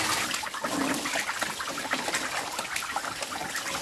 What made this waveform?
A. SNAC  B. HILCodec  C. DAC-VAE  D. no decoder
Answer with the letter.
D